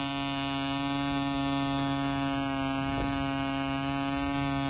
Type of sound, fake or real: real